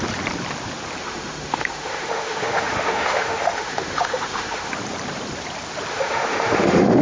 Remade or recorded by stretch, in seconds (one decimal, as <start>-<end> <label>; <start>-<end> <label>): 0.0-1.0 recorded; 1.0-4.7 remade; 4.7-5.9 recorded; 5.9-7.0 remade